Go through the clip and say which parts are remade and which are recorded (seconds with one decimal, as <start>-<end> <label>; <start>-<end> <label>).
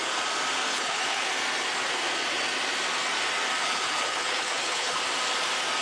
0.0-0.7 recorded; 0.7-1.3 remade; 1.3-3.6 recorded; 3.6-5.0 remade; 5.0-5.8 recorded